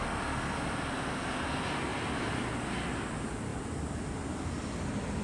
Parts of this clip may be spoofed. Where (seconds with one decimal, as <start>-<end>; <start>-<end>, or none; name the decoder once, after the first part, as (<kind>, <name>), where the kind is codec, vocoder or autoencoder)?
3.5-4.1 (vocoder, BigVGAN v2)

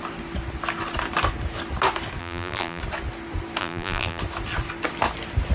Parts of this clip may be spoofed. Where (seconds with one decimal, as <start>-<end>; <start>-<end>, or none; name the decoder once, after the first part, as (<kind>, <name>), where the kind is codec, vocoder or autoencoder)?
2.2-2.8 (vocoder, BigVGAN v2); 3.6-4.2

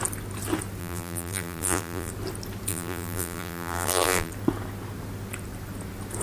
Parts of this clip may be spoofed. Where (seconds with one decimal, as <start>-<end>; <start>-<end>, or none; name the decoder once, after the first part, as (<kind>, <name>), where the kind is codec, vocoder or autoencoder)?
0.8-2.1 (vocoder, BigVGAN v2); 2.7-4.3